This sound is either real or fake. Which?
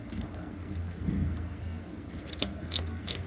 fake